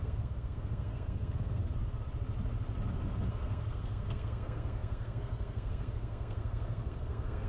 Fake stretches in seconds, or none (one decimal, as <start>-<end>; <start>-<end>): 0.0-1.6; 3.3-7.5